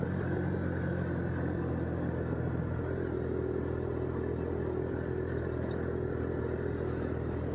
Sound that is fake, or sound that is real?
real